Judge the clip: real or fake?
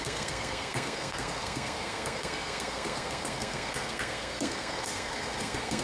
fake